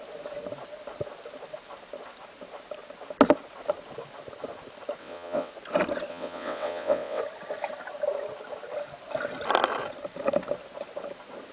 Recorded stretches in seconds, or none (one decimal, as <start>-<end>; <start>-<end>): 0.0-5.0; 5.5-6.1; 7.2-11.5